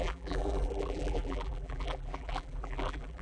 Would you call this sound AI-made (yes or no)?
yes